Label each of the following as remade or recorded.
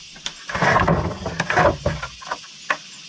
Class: recorded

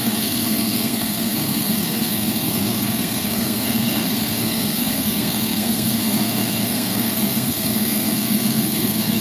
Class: remade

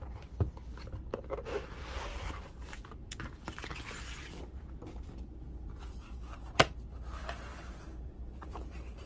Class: recorded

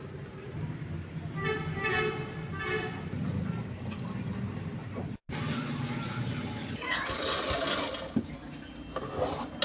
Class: recorded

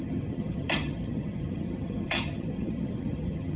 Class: remade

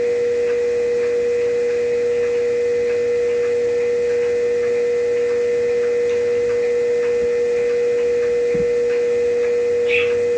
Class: recorded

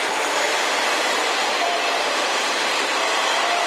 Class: remade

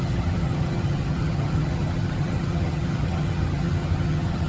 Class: remade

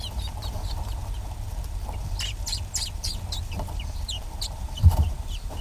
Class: remade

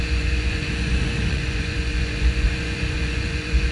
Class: remade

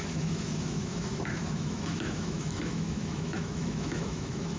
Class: remade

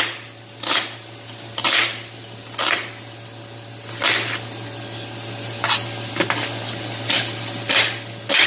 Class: recorded